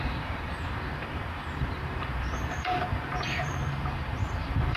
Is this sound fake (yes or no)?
yes